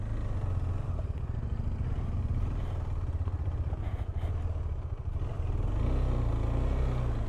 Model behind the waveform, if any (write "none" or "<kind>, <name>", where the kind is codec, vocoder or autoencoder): none